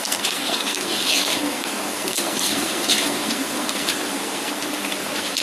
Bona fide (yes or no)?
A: no